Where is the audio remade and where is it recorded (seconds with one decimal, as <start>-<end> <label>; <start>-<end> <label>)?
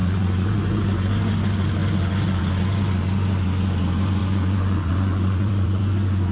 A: 0.0-1.1 remade; 1.1-4.2 recorded; 4.2-5.8 remade; 5.8-6.3 recorded